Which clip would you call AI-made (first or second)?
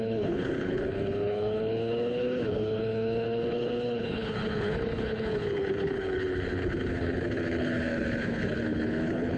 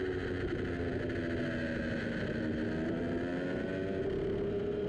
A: first